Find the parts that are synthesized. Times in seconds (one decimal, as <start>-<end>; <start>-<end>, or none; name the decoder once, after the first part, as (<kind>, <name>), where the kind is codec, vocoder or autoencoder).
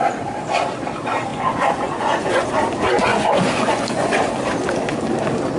1.3-2.5 (vocoder, Vocos); 3.1-4.3